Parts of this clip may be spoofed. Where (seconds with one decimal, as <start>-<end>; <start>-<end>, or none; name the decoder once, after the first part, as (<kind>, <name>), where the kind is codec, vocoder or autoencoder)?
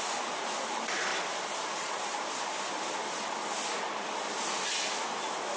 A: 1.1-2.7 (vocoder, BigVGAN v2)